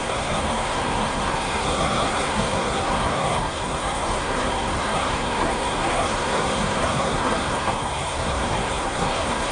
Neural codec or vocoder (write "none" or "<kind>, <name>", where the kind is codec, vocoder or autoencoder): codec, SNAC